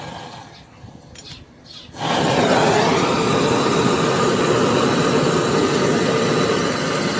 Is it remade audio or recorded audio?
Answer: recorded